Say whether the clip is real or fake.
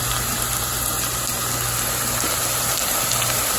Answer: real